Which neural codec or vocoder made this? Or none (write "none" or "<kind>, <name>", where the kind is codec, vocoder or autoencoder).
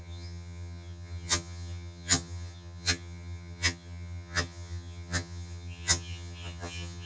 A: vocoder, HiFi-GAN